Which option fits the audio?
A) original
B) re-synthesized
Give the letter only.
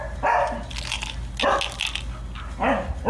A